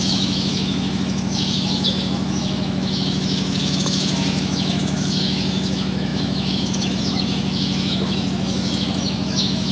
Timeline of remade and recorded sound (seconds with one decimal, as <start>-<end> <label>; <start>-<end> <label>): 0.0-9.7 remade